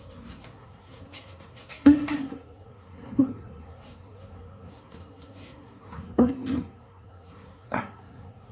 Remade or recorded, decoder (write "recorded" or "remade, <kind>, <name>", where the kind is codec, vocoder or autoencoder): remade, codec, SNAC